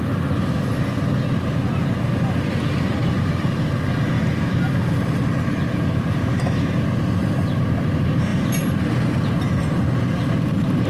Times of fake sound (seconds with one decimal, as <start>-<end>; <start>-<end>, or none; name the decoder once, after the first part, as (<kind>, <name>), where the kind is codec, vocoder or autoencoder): 3.0-3.7 (vocoder, BigVGAN v2)